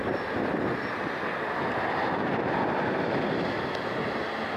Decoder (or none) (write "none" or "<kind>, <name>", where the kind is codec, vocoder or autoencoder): none